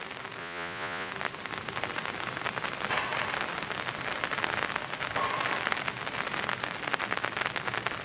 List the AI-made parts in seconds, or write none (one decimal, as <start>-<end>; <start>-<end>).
0.4-1.1